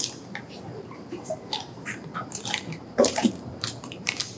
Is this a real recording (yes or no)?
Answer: no